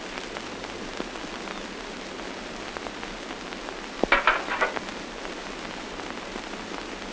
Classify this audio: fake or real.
real